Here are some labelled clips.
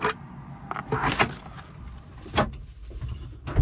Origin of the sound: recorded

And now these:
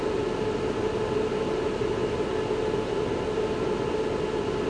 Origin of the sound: recorded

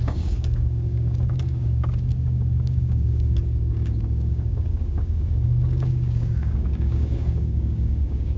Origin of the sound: remade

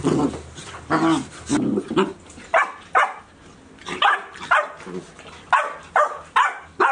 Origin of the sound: recorded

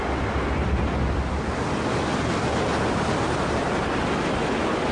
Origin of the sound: recorded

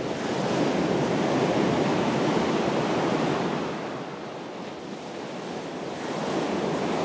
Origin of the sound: recorded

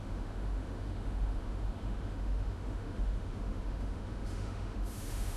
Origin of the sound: remade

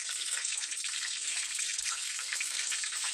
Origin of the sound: remade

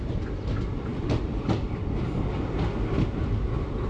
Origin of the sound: recorded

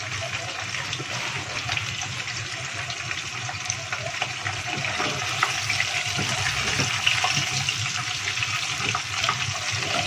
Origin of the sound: recorded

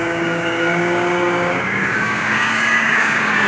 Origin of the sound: remade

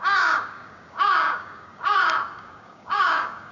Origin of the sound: remade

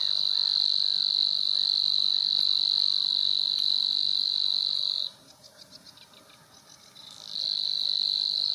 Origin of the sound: recorded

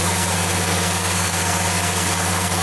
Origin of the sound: remade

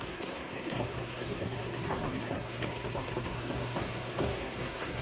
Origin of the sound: remade